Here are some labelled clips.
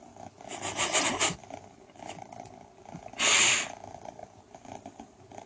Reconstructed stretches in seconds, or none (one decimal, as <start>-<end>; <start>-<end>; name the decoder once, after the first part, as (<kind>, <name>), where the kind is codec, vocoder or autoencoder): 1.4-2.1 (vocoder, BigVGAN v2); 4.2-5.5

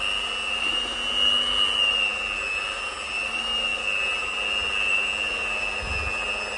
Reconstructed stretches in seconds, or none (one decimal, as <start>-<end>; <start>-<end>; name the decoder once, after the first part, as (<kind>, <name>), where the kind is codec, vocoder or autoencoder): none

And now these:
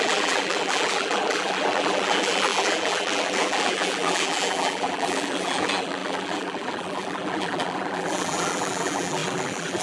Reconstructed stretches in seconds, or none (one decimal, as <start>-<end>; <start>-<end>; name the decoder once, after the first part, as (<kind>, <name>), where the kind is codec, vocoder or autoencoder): 0.0-9.8 (vocoder, BigVGAN v2)

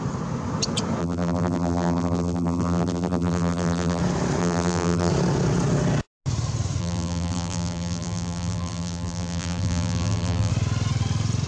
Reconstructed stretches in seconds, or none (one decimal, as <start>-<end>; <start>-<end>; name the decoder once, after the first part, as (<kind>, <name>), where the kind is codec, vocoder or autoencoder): 1.0-4.0 (vocoder, BigVGAN v2); 4.4-5.1; 6.8-10.5